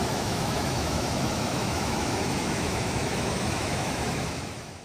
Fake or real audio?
fake